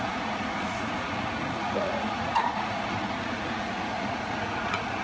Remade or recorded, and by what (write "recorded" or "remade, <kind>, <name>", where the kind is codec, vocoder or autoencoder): remade, vocoder, Vocos